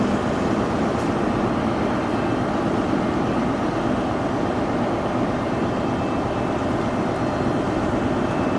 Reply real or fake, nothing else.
real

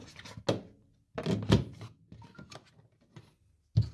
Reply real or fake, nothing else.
real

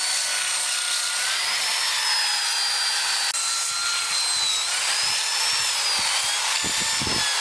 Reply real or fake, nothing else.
real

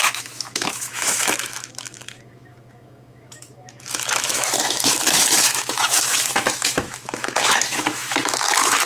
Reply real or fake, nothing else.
fake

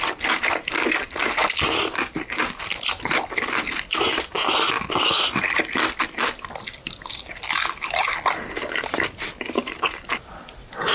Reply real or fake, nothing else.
real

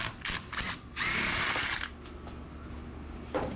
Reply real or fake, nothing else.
real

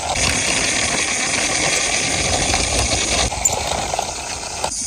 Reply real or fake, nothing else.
real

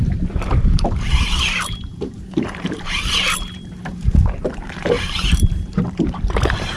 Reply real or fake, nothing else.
fake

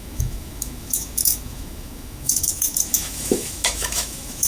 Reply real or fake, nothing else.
fake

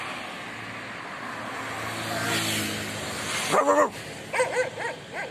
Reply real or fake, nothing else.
real